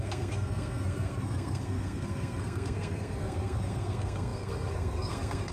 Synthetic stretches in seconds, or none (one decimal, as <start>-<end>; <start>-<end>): 0.0-5.5